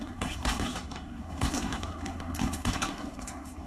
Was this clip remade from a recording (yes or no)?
yes